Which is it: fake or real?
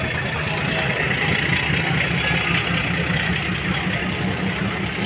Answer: real